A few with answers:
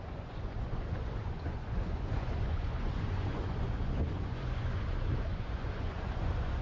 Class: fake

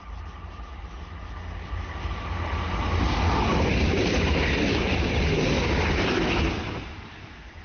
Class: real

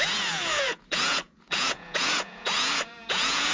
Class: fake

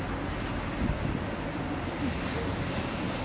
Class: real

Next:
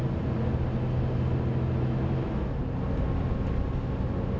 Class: real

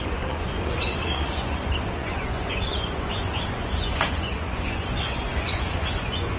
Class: fake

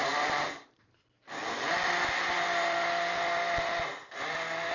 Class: real